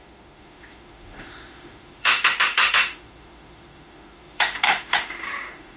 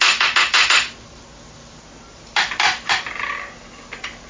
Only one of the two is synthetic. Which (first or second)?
first